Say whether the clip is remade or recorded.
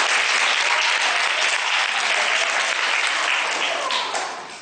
recorded